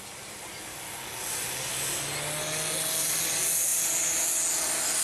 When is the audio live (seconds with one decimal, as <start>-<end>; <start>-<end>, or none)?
0.0-5.0